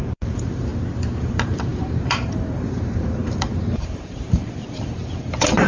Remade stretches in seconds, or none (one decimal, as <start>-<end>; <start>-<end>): 0.0-0.7; 1.2-5.7